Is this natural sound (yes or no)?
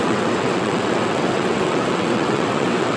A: no